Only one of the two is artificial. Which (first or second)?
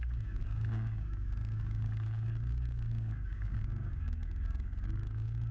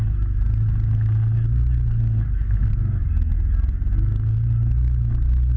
first